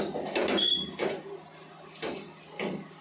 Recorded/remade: recorded